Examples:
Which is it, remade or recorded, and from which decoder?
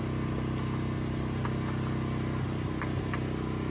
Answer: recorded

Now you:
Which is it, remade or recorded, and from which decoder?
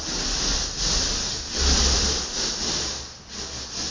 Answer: remade, vocoder, BigVGAN v2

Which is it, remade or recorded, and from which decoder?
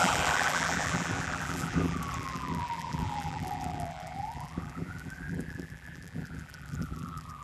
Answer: remade, vocoder, BigVGAN v2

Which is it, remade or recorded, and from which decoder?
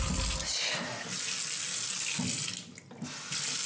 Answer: recorded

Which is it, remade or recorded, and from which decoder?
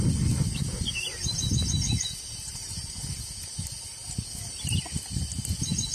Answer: recorded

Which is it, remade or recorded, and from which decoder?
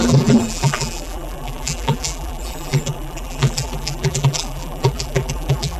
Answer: remade, vocoder, BigVGAN v2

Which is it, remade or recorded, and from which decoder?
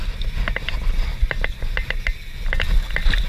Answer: recorded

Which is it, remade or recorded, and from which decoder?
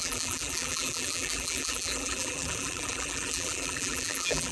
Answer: remade, vocoder, BigVGAN v2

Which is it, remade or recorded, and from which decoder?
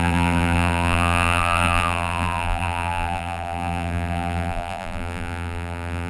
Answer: remade, vocoder, BigVGAN v2